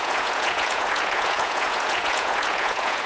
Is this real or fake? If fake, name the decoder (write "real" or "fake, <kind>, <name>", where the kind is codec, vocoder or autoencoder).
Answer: fake, vocoder, Vocos